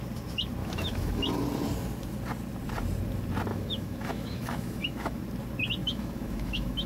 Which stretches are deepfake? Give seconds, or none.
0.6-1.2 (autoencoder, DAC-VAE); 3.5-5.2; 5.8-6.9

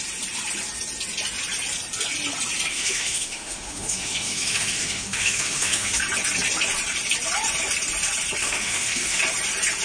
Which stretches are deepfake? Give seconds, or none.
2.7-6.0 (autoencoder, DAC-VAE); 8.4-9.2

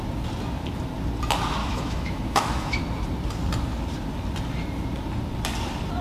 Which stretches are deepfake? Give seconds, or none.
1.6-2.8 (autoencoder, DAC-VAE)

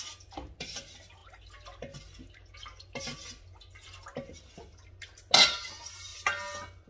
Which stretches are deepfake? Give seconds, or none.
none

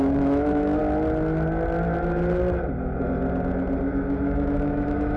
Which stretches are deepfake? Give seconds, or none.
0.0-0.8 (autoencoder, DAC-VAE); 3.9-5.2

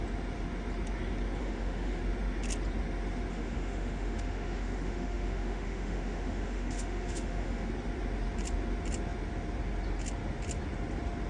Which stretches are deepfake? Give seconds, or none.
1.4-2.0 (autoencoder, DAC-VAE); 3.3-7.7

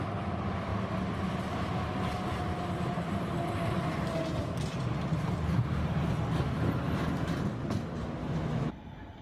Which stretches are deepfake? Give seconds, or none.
8.2-8.7 (autoencoder, DAC-VAE)

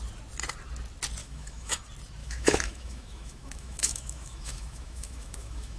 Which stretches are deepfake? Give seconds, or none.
1.2-1.8 (autoencoder, DAC-VAE); 2.2-5.8